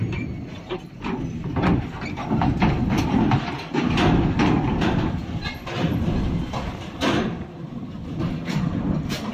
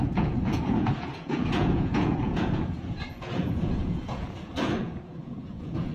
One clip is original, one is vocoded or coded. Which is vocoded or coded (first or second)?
second